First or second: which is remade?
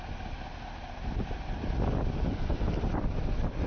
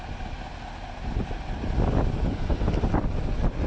first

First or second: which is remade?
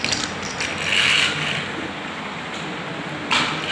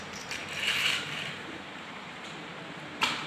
second